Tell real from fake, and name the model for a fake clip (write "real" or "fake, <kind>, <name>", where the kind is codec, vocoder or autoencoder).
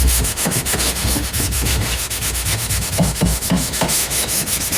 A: fake, autoencoder, DAC-VAE